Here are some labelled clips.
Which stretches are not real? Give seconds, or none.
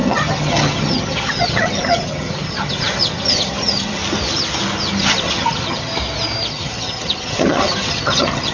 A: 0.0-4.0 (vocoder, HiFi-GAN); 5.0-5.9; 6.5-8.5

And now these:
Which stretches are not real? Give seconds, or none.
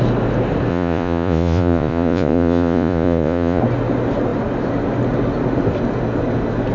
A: 0.7-3.6 (vocoder, Vocos)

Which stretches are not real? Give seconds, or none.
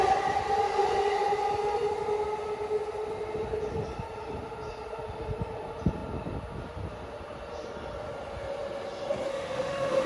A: 9.3-10.1 (autoencoder, DAC-VAE)